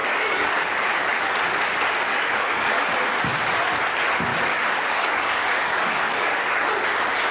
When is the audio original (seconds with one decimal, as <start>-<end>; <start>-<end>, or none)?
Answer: 1.2-2.1; 2.8-4.3; 6.7-7.3